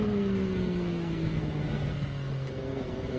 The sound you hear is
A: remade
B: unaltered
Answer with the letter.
A